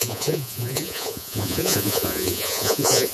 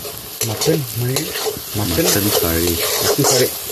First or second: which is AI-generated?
first